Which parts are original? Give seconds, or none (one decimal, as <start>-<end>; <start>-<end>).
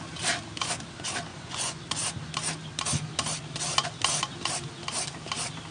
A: 0.0-1.3; 1.8-5.7